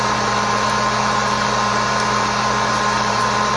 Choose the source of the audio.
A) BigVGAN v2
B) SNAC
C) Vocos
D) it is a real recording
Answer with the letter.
A